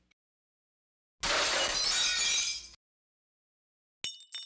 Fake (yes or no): no